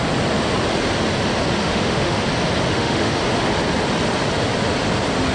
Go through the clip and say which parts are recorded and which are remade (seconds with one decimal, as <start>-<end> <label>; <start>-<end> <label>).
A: 0.0-1.6 recorded; 1.6-2.2 remade; 2.2-2.7 recorded; 2.7-3.2 remade; 3.2-5.3 recorded

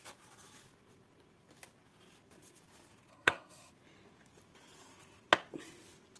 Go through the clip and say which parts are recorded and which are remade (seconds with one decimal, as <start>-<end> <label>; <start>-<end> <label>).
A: 0.0-3.1 recorded; 3.1-3.7 remade; 3.7-6.2 recorded

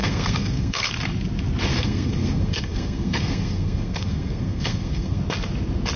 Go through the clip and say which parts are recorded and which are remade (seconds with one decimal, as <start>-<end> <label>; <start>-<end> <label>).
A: 0.0-0.9 remade; 0.9-1.7 recorded; 1.7-5.2 remade; 5.2-6.0 recorded

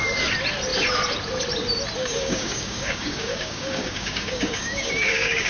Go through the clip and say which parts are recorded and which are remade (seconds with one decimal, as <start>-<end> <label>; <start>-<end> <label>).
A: 0.0-2.0 recorded; 2.0-5.5 remade

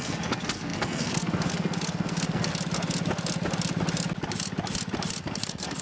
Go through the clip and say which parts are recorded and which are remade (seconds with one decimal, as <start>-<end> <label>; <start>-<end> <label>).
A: 0.0-2.5 remade; 2.5-5.2 recorded; 5.2-5.8 remade

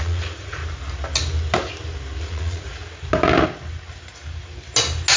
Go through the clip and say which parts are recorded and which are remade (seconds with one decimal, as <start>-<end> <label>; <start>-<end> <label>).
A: 0.0-0.6 remade; 0.6-2.2 recorded; 2.2-2.8 remade; 2.8-5.2 recorded

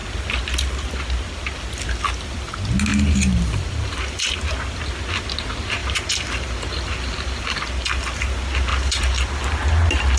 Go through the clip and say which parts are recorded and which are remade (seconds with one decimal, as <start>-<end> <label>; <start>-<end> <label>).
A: 0.0-2.9 recorded; 2.9-4.4 remade; 4.4-5.8 recorded; 5.8-7.7 remade; 7.7-8.7 recorded; 8.7-9.4 remade; 9.4-10.2 recorded

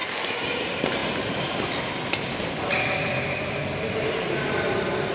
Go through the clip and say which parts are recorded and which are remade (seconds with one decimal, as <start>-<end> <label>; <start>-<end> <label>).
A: 0.0-0.6 recorded; 0.6-1.0 remade; 1.0-2.9 recorded; 2.9-3.6 remade; 3.6-4.2 recorded; 4.2-5.1 remade